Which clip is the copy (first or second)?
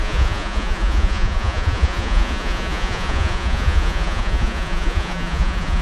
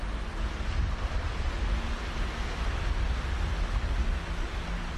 first